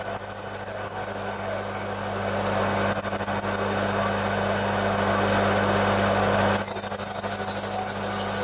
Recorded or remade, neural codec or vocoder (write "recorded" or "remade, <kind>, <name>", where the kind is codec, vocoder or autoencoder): recorded